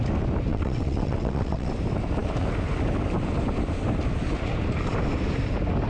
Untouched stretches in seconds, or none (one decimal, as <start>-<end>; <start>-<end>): 0.0-0.5; 1.7-5.9